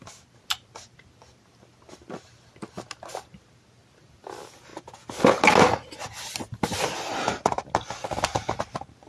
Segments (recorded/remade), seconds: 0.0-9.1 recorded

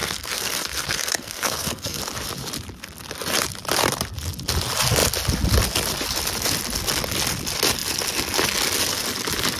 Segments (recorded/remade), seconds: 0.0-2.0 remade; 2.0-9.6 recorded

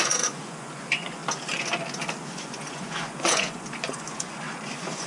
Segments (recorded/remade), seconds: 0.0-1.2 remade; 1.2-2.3 recorded; 2.3-5.1 remade

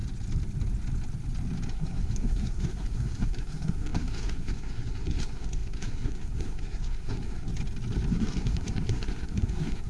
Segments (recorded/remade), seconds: 0.0-1.7 recorded; 1.7-7.5 remade; 7.5-8.1 recorded; 8.1-9.9 remade

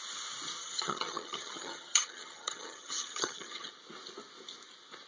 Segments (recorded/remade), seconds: 0.0-0.6 recorded; 0.6-3.7 remade; 3.7-5.1 recorded

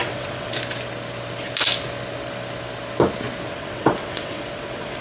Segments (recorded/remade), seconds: 0.0-0.5 remade; 0.5-3.5 recorded; 3.5-5.0 remade